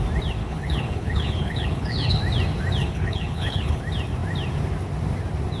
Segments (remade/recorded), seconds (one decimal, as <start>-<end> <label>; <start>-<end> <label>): 0.0-0.4 recorded; 0.4-2.2 remade; 2.2-2.8 recorded; 2.8-3.8 remade; 3.8-5.6 recorded